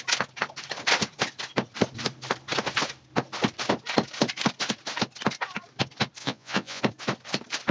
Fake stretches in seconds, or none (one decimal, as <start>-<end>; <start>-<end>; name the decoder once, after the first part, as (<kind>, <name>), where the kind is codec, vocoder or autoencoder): 6.2-6.8 (vocoder, Vocos)